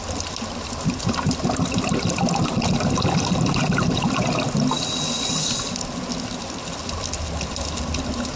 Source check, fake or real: real